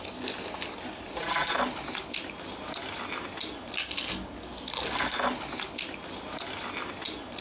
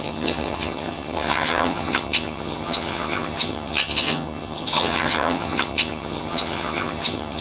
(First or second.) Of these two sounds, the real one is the first